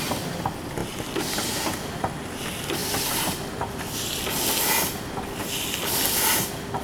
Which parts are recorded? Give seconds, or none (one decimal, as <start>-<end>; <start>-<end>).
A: 0.0-6.8